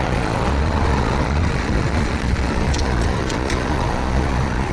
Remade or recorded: remade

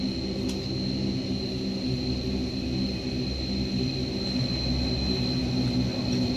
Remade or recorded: recorded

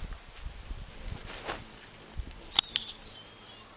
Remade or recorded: recorded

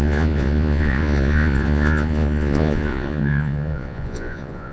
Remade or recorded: remade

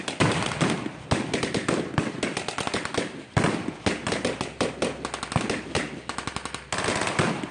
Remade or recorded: recorded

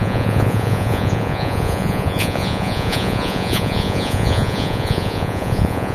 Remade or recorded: remade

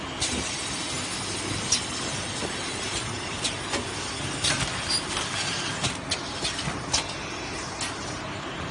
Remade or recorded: recorded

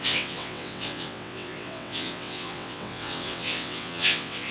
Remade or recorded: remade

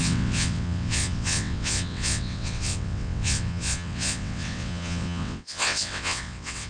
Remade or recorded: remade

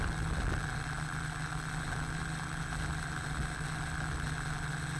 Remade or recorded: recorded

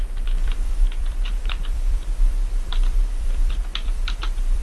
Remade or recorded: remade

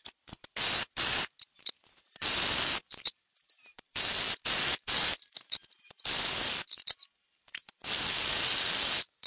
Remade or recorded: recorded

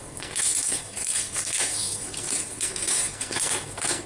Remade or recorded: remade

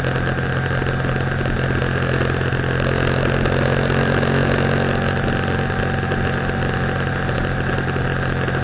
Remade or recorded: recorded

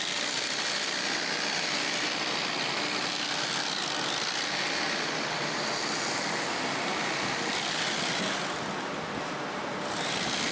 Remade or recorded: recorded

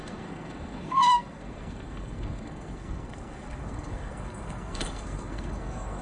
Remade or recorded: remade